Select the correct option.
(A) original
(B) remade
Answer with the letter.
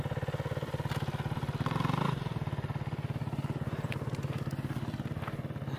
A